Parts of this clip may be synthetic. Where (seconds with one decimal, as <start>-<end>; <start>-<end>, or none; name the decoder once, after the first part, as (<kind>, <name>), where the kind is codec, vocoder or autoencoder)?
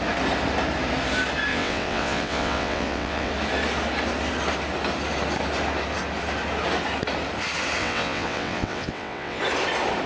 1.5-3.3 (vocoder, WaveNeXt); 7.8-9.4